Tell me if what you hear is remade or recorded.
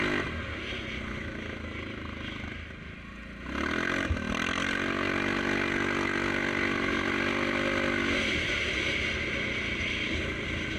recorded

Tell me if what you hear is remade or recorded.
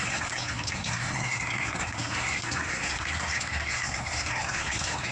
remade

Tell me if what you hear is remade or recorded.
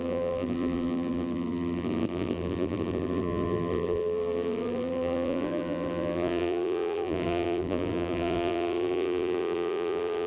remade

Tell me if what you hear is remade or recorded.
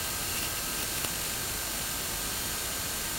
recorded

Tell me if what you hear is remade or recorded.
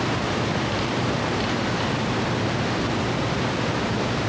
recorded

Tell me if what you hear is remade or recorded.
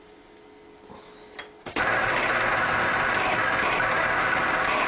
recorded